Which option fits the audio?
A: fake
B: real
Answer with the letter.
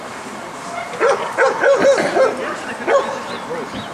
B